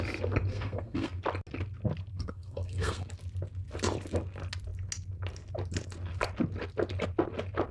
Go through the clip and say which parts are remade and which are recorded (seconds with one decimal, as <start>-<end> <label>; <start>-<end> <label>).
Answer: 0.0-0.5 recorded; 0.5-1.2 remade; 1.2-2.1 recorded; 2.1-3.1 remade; 3.1-7.7 recorded